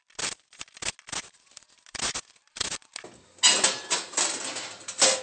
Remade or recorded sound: recorded